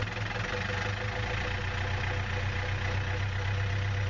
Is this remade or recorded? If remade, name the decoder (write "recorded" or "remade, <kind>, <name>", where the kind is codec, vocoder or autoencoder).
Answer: recorded